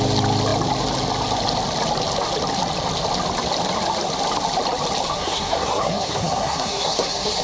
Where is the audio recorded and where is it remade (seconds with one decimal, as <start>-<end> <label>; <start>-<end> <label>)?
0.0-5.1 recorded; 5.1-7.4 remade